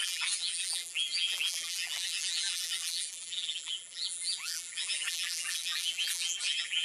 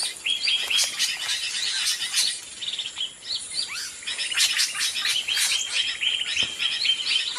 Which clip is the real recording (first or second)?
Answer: second